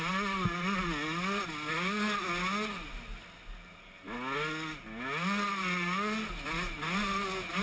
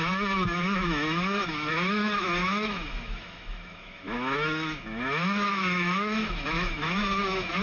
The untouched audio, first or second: first